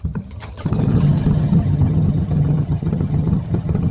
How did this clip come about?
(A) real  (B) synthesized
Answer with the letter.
B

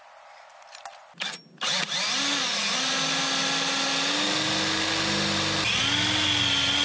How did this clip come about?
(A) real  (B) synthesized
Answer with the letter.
A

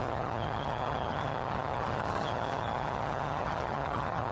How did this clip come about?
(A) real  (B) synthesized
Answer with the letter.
B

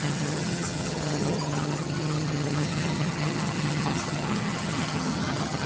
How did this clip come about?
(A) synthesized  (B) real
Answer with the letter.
A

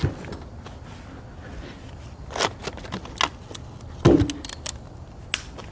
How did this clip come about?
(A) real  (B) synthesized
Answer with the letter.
A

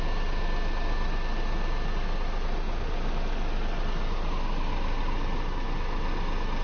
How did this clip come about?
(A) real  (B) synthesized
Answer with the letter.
A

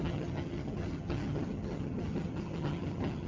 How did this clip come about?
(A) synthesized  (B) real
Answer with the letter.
A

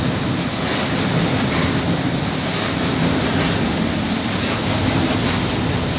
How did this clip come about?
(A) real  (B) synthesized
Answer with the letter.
A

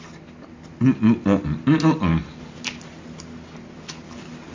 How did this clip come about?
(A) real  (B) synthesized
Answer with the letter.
A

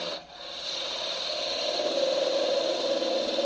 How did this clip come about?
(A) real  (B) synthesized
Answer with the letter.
A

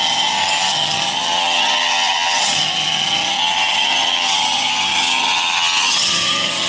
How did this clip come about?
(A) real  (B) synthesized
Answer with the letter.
B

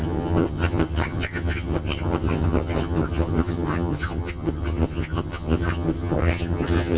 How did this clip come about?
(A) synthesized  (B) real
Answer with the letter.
A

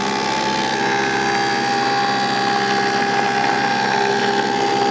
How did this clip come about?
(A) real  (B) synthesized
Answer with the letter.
A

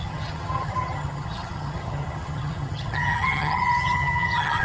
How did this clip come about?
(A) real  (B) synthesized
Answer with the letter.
B